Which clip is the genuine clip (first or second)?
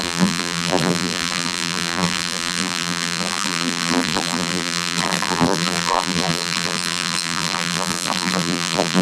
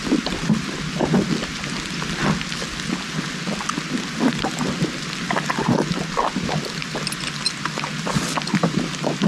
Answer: second